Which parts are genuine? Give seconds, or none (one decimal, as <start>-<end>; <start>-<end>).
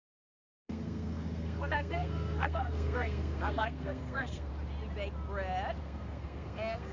4.5-5.8